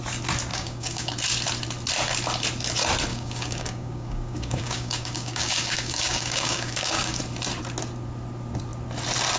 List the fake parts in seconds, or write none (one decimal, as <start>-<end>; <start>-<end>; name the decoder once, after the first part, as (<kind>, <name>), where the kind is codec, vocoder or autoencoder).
0.5-1.1 (codec, DAC); 3.1-7.2